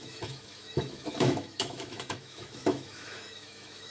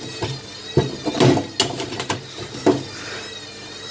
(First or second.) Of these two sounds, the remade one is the first